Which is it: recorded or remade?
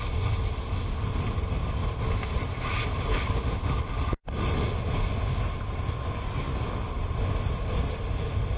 recorded